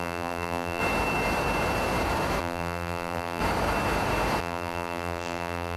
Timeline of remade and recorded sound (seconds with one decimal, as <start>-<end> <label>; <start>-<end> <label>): 0.0-0.8 remade; 0.8-2.4 recorded; 2.4-3.4 remade; 3.4-4.4 recorded; 4.4-5.8 remade